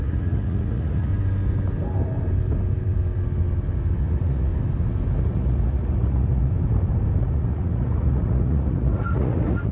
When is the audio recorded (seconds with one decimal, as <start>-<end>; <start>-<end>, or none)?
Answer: 1.1-4.0; 4.5-5.2; 6.5-7.2